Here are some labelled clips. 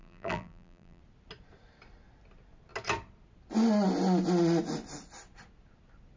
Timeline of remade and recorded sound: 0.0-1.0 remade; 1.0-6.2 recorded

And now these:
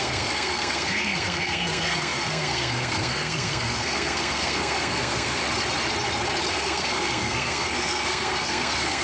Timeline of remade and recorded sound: 0.0-5.4 remade; 5.4-6.5 recorded; 6.5-9.0 remade

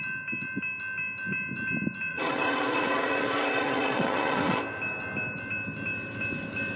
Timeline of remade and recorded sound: 0.0-2.1 recorded; 2.1-4.6 remade; 4.6-6.8 recorded

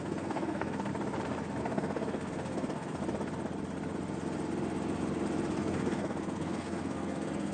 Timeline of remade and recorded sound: 0.0-0.9 remade; 0.9-1.6 recorded; 1.6-3.0 remade; 3.0-5.6 recorded; 5.6-7.5 remade

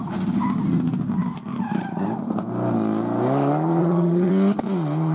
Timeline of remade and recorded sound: 0.0-3.8 recorded; 3.8-4.3 remade; 4.3-5.1 recorded

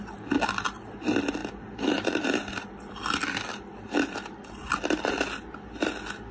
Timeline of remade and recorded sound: 0.0-1.4 recorded; 1.4-4.5 remade; 4.5-6.3 recorded

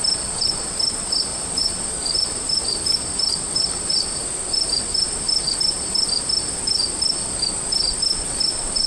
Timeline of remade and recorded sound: 0.0-1.3 recorded; 1.3-4.4 remade; 4.4-8.9 recorded

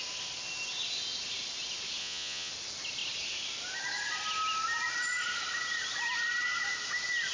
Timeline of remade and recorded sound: 0.0-2.0 recorded; 2.0-2.5 remade; 2.5-7.3 recorded